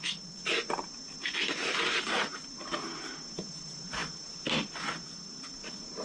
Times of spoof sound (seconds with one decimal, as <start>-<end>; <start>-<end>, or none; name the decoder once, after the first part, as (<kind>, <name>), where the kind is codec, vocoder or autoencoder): none